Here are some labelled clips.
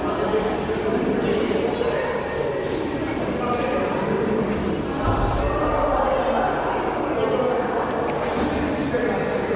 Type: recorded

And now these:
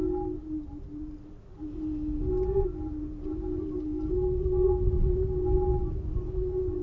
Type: recorded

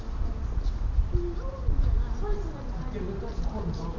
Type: recorded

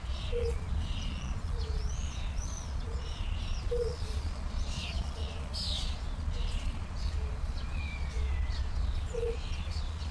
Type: remade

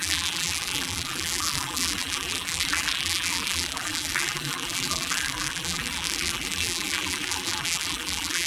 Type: remade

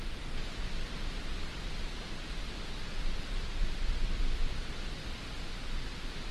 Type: recorded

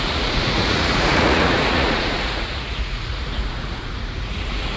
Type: remade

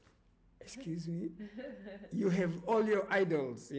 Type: recorded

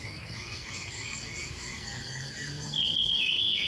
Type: remade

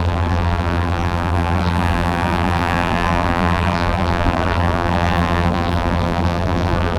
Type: remade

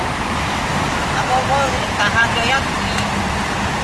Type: recorded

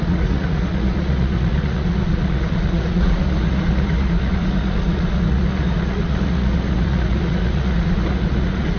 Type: remade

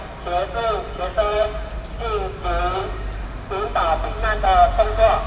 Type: recorded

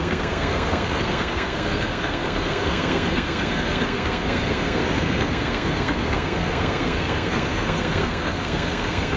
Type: remade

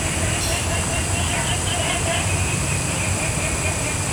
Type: recorded